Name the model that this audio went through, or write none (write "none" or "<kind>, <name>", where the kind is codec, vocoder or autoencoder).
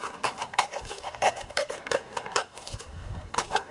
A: codec, SNAC